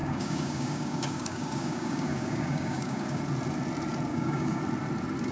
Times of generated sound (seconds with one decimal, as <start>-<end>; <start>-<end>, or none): 0.0-3.2; 4.1-4.6